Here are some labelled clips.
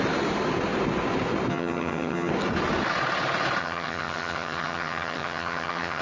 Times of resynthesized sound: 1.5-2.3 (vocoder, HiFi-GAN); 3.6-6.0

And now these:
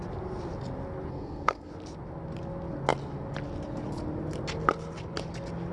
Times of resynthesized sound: 1.1-1.7 (codec, SNAC)

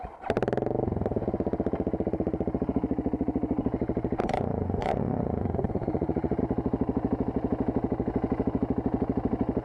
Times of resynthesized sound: 4.2-6.4 (vocoder, Vocos)

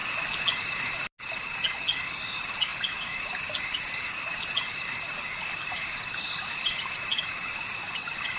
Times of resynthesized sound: 2.2-8.4 (vocoder, BigVGAN v2)

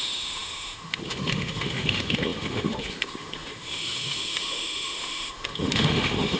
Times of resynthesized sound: 0.0-6.4 (autoencoder, DAC-VAE)